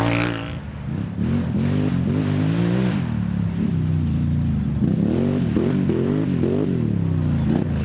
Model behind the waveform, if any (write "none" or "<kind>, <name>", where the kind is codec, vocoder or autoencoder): none